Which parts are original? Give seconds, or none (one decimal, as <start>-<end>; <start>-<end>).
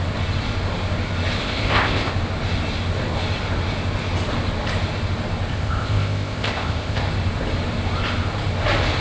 0.0-1.4; 2.1-5.5; 7.0-9.0